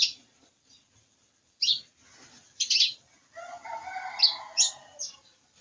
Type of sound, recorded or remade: recorded